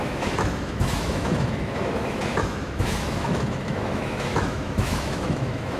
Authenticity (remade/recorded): remade